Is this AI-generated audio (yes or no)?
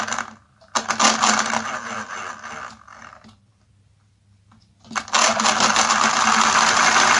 no